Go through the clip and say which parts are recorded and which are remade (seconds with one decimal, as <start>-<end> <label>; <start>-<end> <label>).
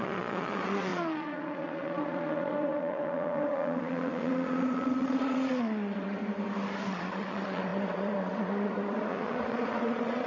0.0-6.2 remade; 6.2-6.9 recorded; 6.9-10.3 remade